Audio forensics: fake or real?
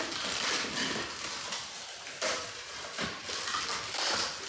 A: real